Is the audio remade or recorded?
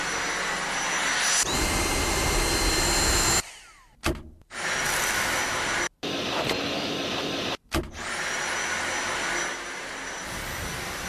recorded